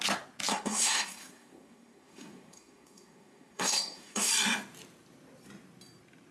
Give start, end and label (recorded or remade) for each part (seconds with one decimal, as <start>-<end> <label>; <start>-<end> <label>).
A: 0.0-0.5 recorded; 0.5-4.3 remade; 4.3-6.3 recorded